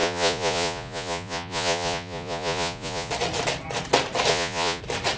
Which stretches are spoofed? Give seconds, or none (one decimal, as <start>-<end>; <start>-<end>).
0.0-3.1; 4.3-4.8